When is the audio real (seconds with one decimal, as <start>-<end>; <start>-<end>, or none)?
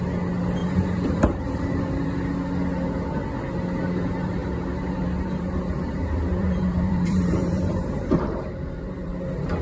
0.0-0.6; 1.8-4.4; 9.1-9.6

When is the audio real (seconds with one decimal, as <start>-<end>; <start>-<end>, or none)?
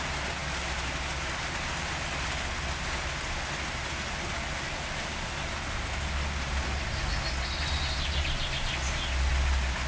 0.0-9.9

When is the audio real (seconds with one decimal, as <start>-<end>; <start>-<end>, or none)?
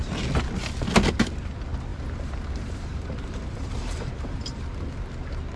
0.0-1.9; 4.6-5.6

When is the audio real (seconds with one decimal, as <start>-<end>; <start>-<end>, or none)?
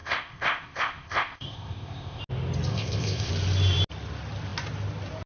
2.2-2.7; 3.3-5.3